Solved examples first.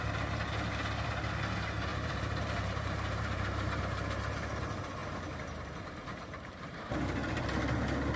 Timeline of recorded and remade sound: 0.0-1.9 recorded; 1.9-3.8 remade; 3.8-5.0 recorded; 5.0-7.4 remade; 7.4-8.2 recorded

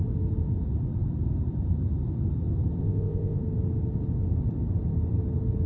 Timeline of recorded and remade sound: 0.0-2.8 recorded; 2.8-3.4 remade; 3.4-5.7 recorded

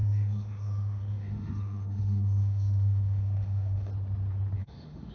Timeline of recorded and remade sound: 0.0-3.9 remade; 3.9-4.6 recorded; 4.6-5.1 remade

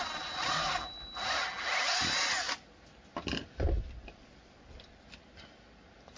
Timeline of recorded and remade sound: 0.0-6.2 recorded